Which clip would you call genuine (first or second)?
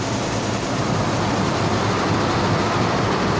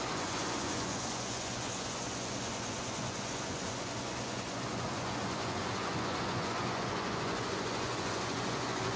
first